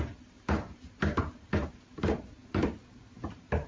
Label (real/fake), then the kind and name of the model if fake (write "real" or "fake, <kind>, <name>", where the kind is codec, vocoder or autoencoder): fake, vocoder, BigVGAN v2